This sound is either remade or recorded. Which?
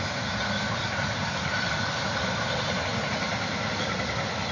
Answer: recorded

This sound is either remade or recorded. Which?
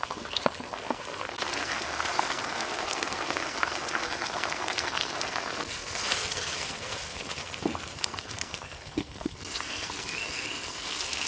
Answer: remade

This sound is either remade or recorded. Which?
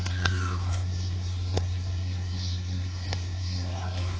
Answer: remade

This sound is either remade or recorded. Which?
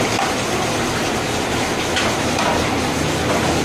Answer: recorded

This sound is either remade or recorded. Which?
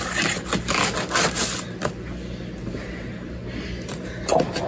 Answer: recorded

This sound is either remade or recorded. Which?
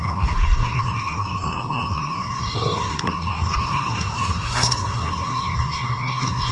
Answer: remade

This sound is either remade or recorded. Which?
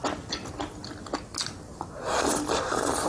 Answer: recorded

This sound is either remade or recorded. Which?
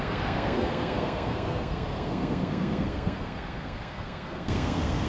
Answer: remade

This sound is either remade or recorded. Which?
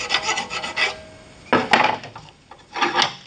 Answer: recorded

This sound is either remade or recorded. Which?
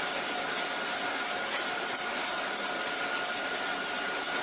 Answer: recorded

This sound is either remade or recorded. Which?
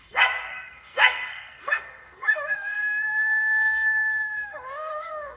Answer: remade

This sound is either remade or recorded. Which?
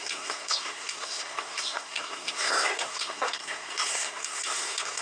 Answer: remade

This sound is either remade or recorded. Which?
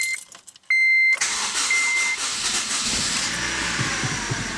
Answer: recorded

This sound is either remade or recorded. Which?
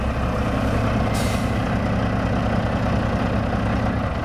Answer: recorded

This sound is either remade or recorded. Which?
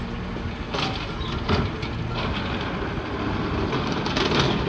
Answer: recorded